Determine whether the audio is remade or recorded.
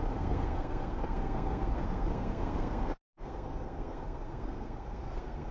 remade